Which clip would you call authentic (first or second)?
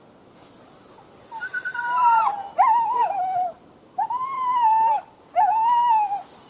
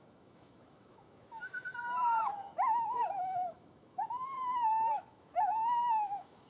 first